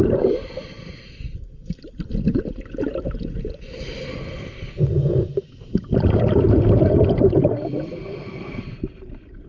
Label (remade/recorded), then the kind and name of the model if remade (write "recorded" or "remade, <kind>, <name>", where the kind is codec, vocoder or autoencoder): remade, vocoder, BigVGAN v2